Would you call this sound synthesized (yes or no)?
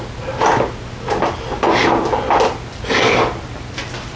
no